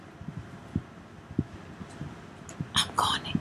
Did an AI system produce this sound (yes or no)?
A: no